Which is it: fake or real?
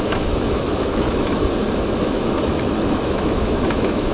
fake